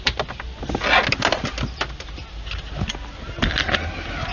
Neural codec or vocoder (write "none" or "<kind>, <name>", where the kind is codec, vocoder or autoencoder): none